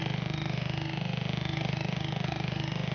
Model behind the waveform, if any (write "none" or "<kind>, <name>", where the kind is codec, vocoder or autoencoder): autoencoder, DAC-VAE